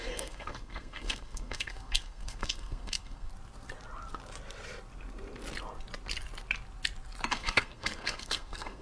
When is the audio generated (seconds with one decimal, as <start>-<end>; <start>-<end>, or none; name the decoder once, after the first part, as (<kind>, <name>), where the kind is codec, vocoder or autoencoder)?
0.0-3.3 (codec, SNAC); 7.3-8.8